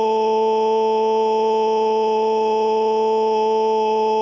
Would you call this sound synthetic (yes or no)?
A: yes